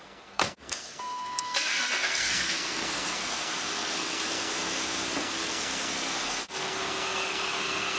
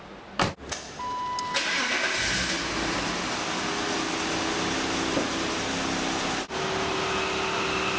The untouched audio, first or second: second